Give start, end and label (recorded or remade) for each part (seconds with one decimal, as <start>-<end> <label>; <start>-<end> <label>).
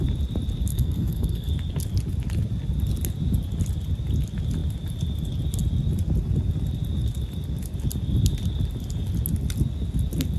0.0-0.7 recorded; 0.7-1.5 remade; 1.5-10.4 recorded